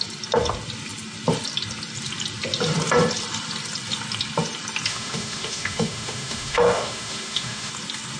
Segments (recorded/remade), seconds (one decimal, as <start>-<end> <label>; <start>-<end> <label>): 0.0-4.9 recorded; 4.9-7.7 remade; 7.7-8.2 recorded